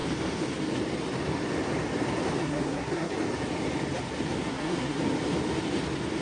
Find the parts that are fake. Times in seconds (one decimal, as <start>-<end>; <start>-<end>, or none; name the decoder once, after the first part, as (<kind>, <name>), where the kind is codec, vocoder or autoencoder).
2.4-3.1 (codec, SNAC); 4.5-5.0